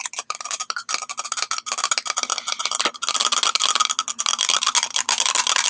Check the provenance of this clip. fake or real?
real